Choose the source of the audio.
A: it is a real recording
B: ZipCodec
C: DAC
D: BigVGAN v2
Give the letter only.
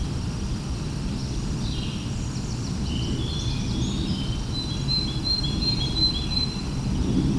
A